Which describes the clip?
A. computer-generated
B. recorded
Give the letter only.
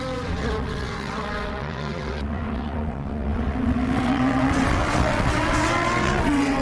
A